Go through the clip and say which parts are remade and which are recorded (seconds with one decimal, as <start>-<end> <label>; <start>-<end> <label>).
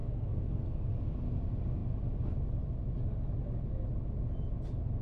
0.0-0.9 remade; 0.9-5.0 recorded